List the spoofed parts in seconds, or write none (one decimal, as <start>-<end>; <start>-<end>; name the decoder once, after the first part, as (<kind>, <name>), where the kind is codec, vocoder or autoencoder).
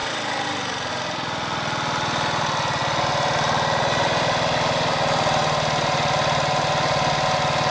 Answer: none